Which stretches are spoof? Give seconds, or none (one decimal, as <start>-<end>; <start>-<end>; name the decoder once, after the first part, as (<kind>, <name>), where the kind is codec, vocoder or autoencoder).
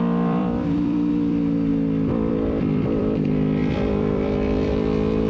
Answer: 0.0-1.7 (vocoder, BigVGAN v2); 2.3-5.3